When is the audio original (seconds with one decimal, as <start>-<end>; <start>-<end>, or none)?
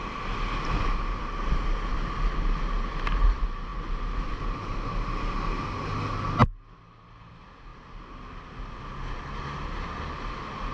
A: 0.0-10.7